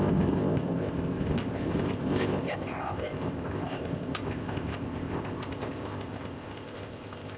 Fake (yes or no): yes